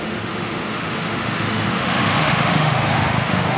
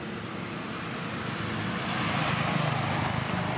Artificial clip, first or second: first